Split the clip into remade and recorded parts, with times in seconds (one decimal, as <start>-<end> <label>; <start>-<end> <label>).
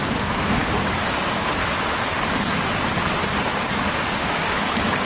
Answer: 0.0-1.6 remade; 1.6-4.1 recorded; 4.1-5.1 remade